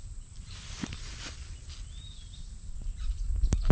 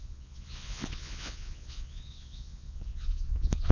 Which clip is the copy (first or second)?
second